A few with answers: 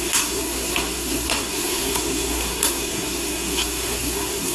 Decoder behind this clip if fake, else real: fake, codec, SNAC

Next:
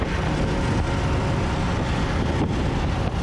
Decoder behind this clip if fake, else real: real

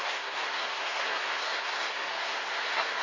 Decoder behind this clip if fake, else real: fake, codec, SNAC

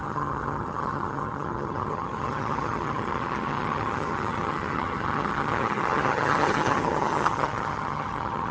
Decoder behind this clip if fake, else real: fake, vocoder, HiFi-GAN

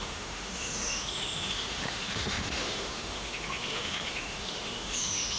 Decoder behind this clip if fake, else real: fake, autoencoder, DAC-VAE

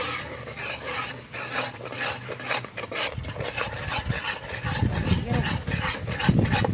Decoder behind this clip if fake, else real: real